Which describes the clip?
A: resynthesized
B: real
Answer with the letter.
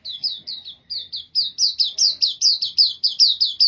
B